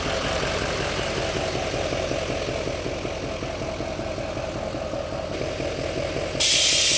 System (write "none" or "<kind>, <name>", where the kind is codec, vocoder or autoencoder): none